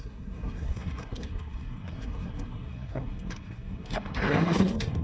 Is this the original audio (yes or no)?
no